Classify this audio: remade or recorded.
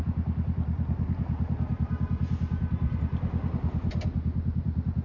recorded